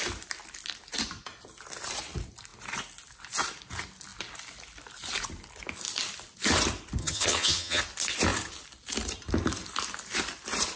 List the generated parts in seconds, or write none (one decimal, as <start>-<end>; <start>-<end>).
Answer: 7.0-7.8